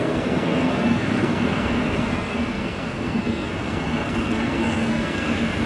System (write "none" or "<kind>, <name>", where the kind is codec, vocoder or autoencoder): codec, SNAC